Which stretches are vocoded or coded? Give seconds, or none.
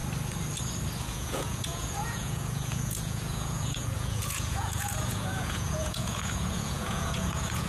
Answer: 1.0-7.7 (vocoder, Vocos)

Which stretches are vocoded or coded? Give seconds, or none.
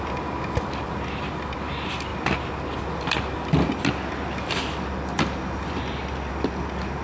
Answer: none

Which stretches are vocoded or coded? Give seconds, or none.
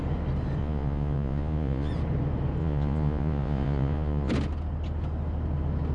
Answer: 0.6-1.9 (vocoder, Vocos); 2.6-4.3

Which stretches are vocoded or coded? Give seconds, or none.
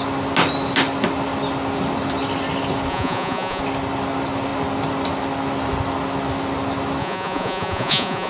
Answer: 2.9-3.6 (vocoder, Vocos); 7.0-8.3